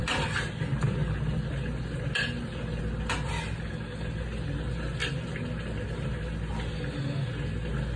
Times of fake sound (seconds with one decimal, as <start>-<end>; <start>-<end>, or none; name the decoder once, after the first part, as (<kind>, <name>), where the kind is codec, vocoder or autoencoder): 0.0-0.6 (vocoder, BigVGAN v2)